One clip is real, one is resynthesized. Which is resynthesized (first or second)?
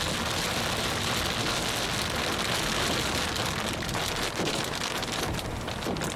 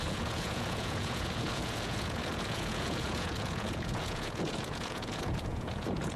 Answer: second